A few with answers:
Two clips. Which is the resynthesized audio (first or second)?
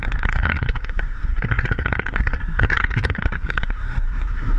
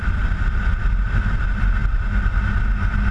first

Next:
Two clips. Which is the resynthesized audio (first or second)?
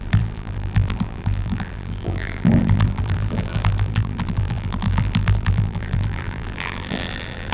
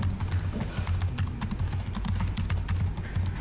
first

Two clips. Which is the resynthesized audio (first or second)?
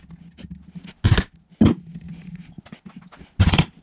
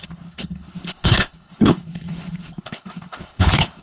second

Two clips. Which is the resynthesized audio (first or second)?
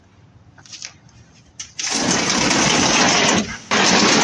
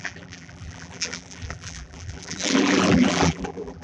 second